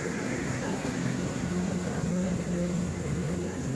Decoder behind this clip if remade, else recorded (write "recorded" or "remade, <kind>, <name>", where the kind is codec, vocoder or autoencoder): remade, codec, SNAC